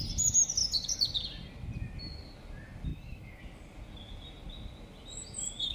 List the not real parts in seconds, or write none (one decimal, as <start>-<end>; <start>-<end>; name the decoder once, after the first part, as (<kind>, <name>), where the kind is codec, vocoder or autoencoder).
2.9-3.4 (autoencoder, DAC-VAE)